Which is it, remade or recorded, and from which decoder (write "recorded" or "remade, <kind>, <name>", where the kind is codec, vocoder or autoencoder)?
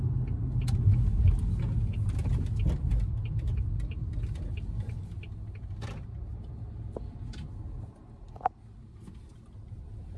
recorded